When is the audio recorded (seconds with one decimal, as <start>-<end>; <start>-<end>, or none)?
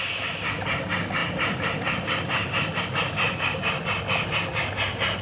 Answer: 0.0-1.2; 2.8-5.2